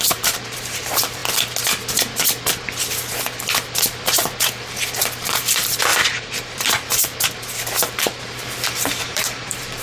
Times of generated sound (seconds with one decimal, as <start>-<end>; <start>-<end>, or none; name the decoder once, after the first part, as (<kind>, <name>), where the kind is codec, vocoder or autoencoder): 0.0-1.2 (vocoder, BigVGAN v2); 5.0-9.8